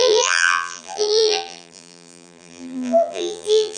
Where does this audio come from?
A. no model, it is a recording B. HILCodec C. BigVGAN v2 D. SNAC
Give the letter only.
C